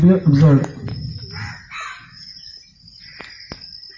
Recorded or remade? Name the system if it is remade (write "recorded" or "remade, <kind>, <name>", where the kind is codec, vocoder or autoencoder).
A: recorded